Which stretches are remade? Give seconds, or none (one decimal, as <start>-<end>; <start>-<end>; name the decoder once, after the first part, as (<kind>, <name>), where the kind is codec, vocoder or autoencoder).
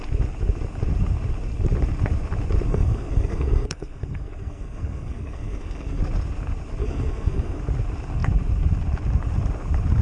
2.7-6.0 (codec, SNAC); 6.8-7.6